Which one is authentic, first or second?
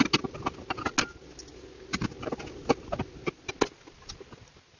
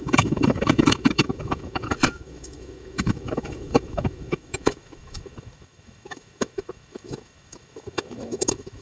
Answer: first